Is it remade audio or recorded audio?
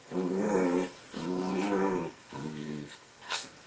remade